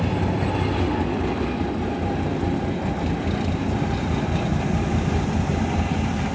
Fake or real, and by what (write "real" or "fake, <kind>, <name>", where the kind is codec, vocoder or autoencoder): real